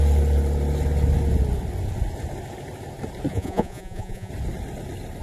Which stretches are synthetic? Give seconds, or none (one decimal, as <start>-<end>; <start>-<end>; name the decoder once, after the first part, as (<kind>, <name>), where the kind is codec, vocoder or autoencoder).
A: 3.3-4.3 (vocoder, Vocos)